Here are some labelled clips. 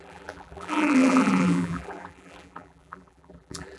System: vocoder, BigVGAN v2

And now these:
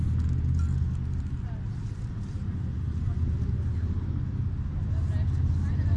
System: none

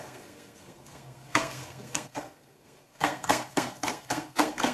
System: codec, SNAC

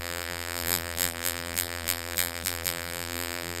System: vocoder, BigVGAN v2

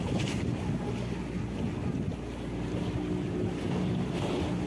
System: none